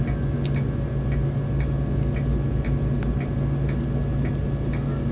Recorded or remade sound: recorded